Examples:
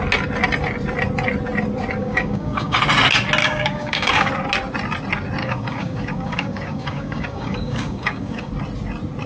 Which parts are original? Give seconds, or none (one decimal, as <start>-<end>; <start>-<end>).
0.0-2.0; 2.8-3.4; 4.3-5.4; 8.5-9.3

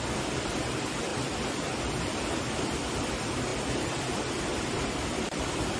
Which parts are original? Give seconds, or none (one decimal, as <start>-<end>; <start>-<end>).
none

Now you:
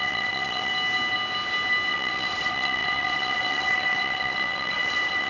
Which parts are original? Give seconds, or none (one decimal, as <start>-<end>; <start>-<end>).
0.7-1.9